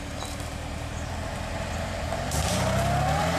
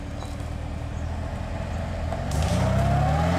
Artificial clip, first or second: first